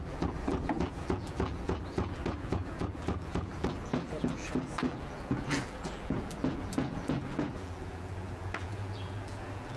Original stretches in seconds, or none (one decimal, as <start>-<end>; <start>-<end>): none